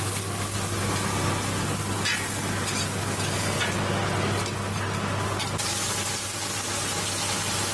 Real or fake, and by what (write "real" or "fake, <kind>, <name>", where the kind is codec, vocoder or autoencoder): real